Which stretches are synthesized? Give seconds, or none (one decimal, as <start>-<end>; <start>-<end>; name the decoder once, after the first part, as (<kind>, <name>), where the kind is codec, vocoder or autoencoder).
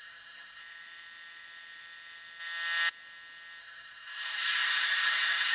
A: 0.0-0.6 (codec, SNAC); 3.6-5.5